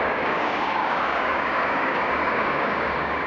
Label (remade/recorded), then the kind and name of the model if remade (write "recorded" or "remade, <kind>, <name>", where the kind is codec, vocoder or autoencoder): remade, codec, DAC